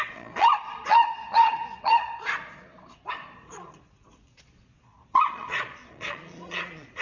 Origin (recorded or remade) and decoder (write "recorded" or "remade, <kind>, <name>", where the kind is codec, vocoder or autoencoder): remade, vocoder, Vocos